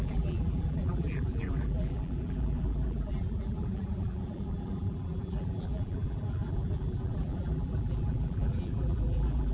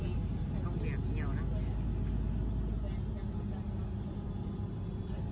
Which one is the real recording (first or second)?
second